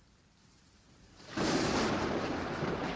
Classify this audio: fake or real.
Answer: real